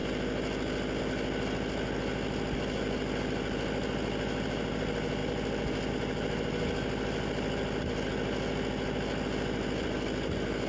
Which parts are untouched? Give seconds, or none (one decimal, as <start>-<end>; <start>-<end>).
0.0-10.7